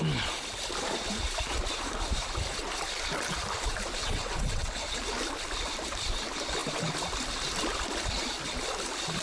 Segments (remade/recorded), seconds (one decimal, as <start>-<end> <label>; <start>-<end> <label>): 0.0-4.0 recorded; 4.0-5.0 remade; 5.0-9.2 recorded